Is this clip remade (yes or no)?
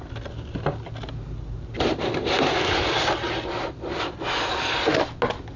no